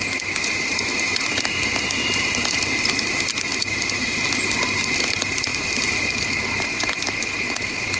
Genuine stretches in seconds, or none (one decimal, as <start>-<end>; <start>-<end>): 0.0-8.0